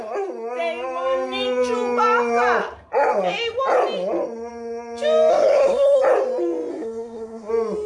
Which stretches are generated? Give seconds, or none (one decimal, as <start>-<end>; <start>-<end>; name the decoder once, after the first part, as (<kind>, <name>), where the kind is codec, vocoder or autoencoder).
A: 5.3-6.0 (codec, SNAC); 6.7-7.5